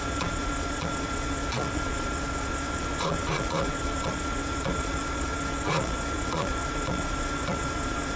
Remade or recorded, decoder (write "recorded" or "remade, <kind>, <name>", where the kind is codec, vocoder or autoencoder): remade, vocoder, Vocos